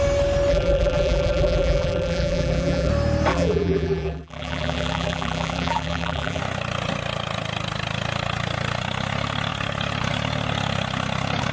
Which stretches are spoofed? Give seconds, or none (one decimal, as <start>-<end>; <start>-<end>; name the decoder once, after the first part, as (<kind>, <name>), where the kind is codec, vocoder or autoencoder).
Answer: 0.5-2.9 (vocoder, BigVGAN v2); 3.3-6.4